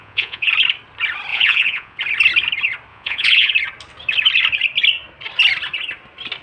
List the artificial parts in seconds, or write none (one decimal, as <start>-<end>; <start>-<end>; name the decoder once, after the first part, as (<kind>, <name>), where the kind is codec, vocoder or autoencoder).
0.0-0.5 (vocoder, Vocos); 1.3-2.0; 2.9-3.5